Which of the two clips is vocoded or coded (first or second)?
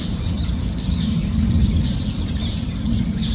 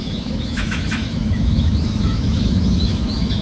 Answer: second